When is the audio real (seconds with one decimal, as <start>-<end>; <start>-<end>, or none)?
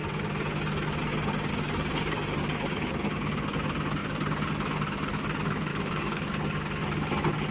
0.0-1.5; 2.9-5.7; 6.3-7.5